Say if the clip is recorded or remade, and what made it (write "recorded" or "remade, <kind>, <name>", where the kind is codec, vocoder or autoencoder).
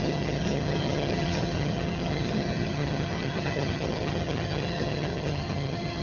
remade, vocoder, HiFi-GAN